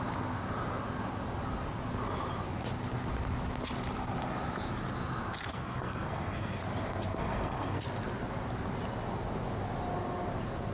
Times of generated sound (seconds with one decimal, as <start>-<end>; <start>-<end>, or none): 5.5-6.6; 7.2-7.8